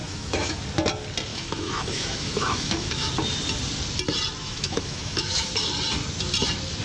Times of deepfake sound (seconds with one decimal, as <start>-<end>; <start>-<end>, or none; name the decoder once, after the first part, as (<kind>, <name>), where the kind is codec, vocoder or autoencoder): 0.0-0.6 (autoencoder, DAC-VAE); 1.3-3.1; 4.4-5.5